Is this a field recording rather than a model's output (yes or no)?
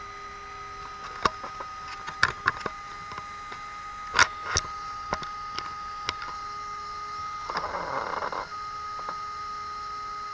yes